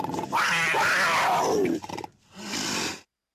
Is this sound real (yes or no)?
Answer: yes